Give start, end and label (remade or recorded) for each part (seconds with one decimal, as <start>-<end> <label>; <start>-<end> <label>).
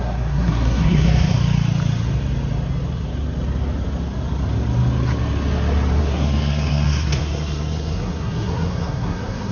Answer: 0.0-1.4 remade; 1.4-6.0 recorded; 6.0-9.5 remade